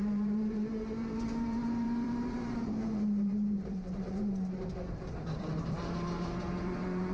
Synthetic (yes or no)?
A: yes